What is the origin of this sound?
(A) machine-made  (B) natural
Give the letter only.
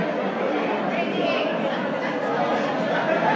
B